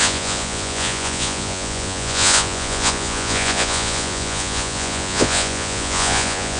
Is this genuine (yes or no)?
no